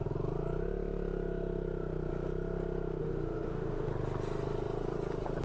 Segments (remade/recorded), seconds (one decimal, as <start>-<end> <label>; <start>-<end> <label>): 0.0-3.0 recorded; 3.0-3.9 remade; 3.9-5.4 recorded